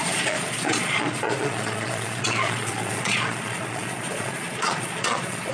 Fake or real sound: fake